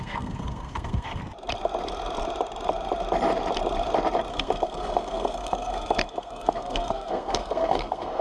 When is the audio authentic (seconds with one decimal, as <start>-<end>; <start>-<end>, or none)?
1.2-4.3